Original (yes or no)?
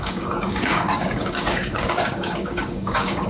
no